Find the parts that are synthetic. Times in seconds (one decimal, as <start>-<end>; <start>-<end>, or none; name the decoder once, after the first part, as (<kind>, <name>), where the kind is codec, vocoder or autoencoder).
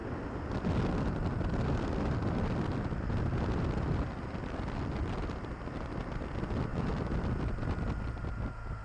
none